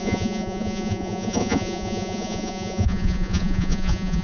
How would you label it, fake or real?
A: fake